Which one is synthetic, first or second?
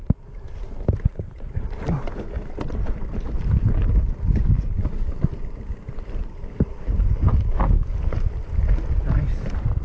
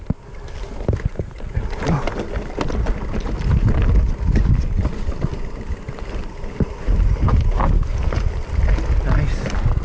first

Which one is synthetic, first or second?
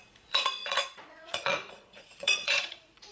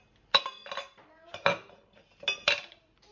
first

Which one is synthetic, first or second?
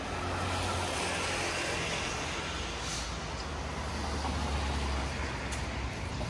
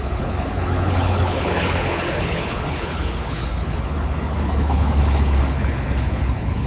second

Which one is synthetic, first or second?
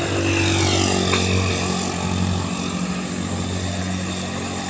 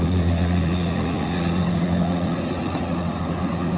second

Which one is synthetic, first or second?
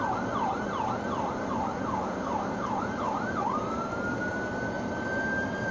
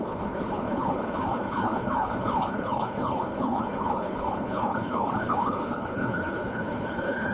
second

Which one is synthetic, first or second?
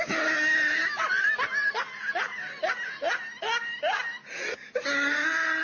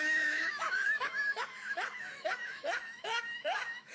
second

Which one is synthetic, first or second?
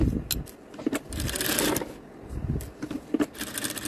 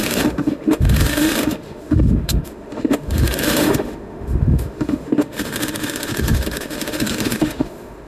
second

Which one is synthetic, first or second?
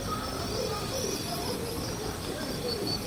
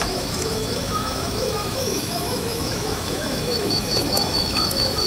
second